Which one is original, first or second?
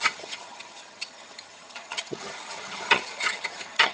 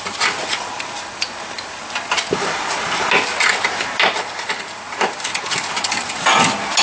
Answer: second